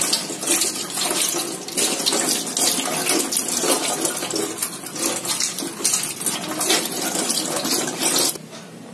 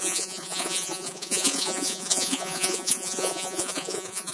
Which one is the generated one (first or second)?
second